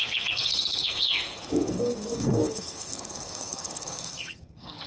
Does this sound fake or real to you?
fake